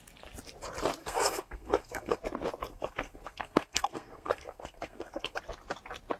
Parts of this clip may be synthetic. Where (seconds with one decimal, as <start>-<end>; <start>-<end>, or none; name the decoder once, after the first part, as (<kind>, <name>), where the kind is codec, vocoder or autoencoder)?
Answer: 1.0-2.2 (codec, SNAC); 2.7-5.4

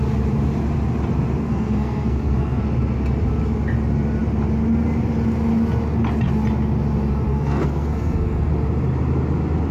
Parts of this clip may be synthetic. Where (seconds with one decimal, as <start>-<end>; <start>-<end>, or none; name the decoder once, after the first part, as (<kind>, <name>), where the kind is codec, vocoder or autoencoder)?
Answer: 1.4-2.6 (codec, SNAC); 7.3-8.5

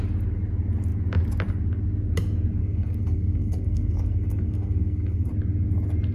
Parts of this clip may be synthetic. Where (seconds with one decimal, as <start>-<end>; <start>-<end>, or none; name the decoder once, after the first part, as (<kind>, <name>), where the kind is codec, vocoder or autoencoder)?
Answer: 2.6-5.3 (codec, SNAC)